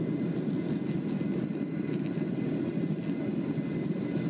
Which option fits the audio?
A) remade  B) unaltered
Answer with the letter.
B